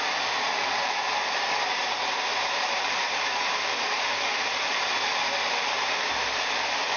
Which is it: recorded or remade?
remade